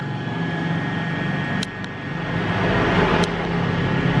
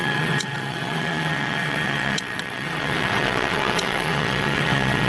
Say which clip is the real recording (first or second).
first